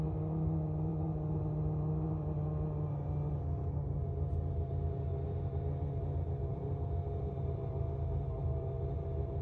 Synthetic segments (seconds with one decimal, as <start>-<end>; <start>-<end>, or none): none